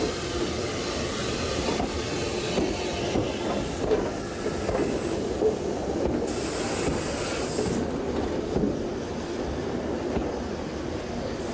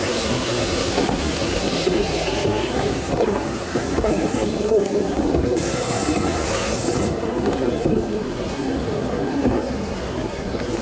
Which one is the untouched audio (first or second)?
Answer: first